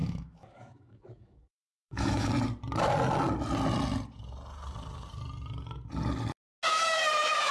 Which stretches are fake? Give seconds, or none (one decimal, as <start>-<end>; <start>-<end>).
0.0-2.3; 6.7-7.5